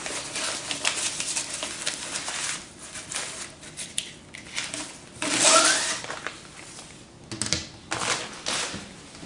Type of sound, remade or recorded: recorded